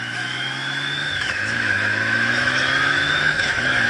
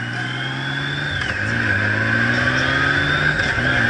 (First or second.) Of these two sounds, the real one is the second